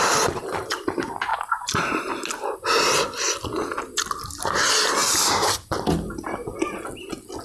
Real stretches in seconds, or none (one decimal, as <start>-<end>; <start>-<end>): 0.0-1.3; 2.1-5.0; 5.6-7.4